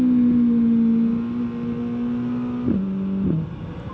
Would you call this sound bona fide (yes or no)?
yes